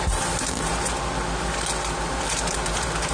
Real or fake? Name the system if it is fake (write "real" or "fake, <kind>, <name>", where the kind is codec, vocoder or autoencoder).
fake, vocoder, BigVGAN v2